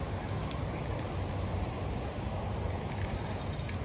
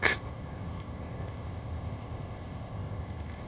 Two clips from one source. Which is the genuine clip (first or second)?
first